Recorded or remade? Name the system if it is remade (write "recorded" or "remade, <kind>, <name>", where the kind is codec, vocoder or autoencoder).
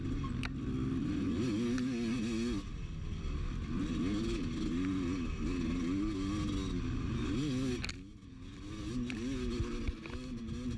recorded